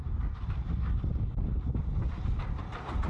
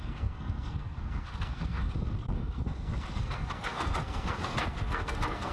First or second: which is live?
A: first